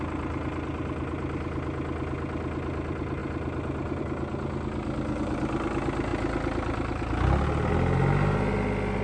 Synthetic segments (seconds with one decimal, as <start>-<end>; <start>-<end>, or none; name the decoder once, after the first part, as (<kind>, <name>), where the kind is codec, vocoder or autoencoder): none